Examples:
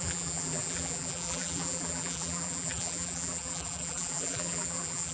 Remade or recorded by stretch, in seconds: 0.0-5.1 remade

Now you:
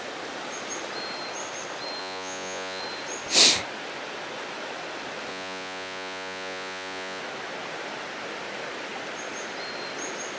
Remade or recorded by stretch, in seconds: 0.0-2.0 recorded; 2.0-2.8 remade; 2.8-5.3 recorded; 5.3-7.2 remade; 7.2-10.4 recorded

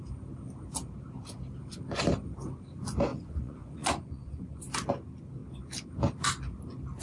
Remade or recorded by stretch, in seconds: 0.0-3.1 recorded; 3.1-4.6 remade; 4.6-7.0 recorded

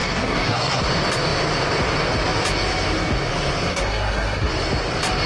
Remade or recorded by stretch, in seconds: 0.0-0.8 remade; 0.8-3.7 recorded; 3.7-4.5 remade; 4.5-5.3 recorded

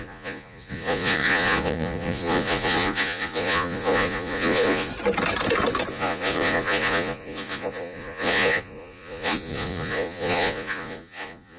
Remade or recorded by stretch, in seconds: 0.0-4.9 remade; 4.9-5.9 recorded; 5.9-11.6 remade

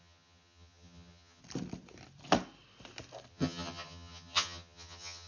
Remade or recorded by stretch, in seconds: 0.0-1.4 remade; 1.4-3.3 recorded; 3.3-5.3 remade

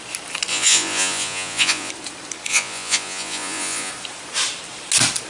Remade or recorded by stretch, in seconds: 0.0-0.5 recorded; 0.5-1.9 remade; 1.9-2.5 recorded; 2.5-3.9 remade; 3.9-5.3 recorded

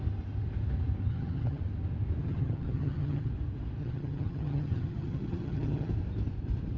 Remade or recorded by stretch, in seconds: 0.0-1.1 recorded; 1.1-1.6 remade; 1.6-2.2 recorded; 2.2-3.3 remade; 3.3-3.8 recorded; 3.8-5.9 remade; 5.9-6.8 recorded